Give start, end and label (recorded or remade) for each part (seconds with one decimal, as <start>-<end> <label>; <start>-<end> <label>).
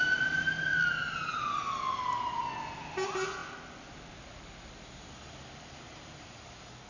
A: 0.0-6.9 recorded